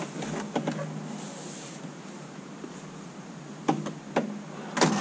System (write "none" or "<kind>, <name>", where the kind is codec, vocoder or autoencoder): none